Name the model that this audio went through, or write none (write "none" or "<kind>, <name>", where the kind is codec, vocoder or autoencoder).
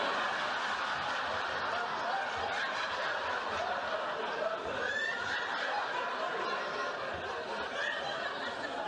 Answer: none